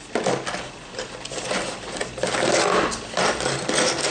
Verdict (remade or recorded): recorded